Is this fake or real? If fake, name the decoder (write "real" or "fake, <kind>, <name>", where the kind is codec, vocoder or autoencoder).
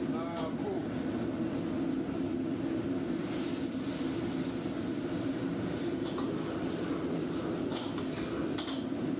real